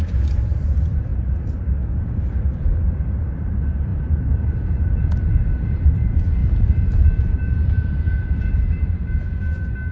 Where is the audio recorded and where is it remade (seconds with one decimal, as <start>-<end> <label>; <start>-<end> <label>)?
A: 0.0-9.0 remade; 9.0-9.9 recorded